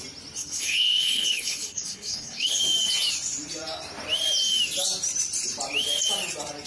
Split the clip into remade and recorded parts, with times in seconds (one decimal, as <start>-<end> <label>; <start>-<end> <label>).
0.0-0.4 recorded; 0.4-2.6 remade; 2.6-6.7 recorded